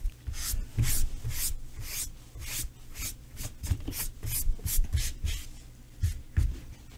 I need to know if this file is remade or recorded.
recorded